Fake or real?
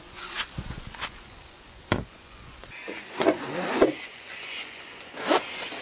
fake